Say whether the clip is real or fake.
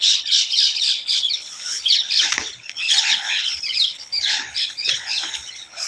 fake